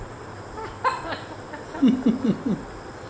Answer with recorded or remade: recorded